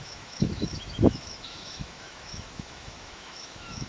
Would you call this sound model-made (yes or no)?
yes